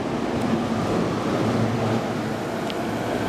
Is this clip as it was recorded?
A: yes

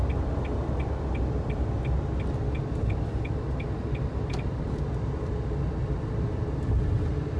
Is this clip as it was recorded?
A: yes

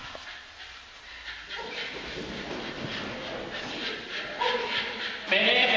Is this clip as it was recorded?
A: yes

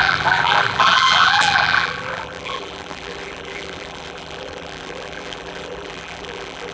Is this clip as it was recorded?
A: no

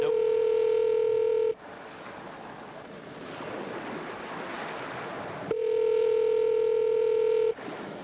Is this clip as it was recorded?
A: yes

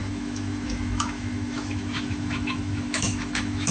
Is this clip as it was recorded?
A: no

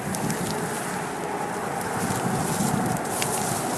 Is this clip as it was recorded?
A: yes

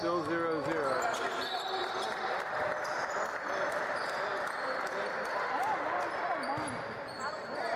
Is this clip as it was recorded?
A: yes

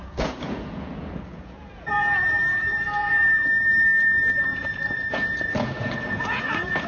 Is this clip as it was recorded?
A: no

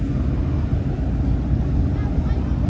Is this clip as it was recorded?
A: yes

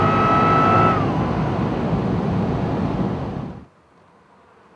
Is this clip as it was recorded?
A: yes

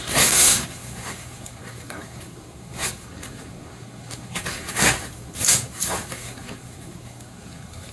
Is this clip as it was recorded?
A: no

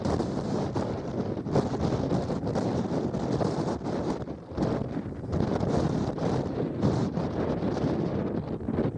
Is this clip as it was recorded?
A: yes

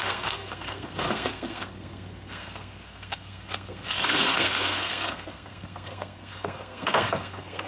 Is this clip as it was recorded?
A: no